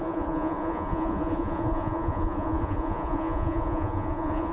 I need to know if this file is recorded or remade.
remade